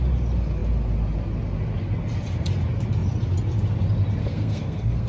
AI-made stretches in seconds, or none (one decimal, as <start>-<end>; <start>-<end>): 4.2-5.1